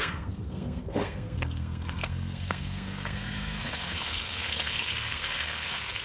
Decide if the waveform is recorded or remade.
remade